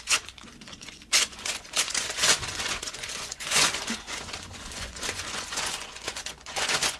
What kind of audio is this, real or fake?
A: fake